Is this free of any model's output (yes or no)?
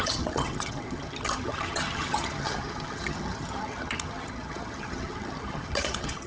no